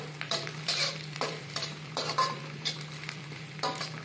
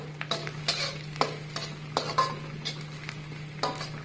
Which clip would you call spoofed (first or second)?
first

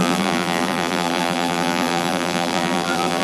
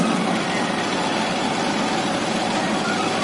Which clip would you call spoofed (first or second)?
first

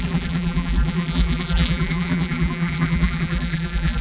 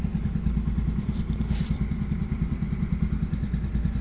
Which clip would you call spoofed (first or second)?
first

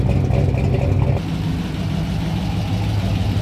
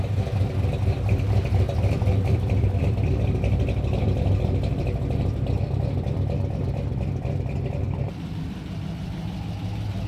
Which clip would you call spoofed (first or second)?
second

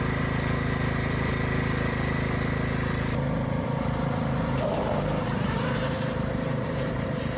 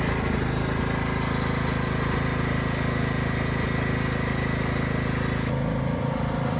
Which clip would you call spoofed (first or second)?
first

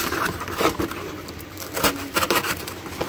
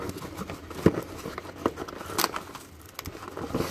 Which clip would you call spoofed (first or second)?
first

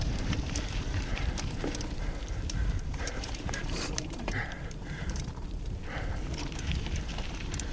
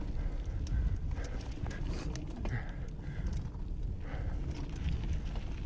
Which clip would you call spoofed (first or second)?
first